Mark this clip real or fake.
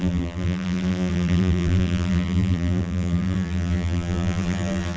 fake